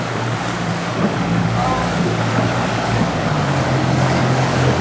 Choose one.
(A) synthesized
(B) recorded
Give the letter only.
A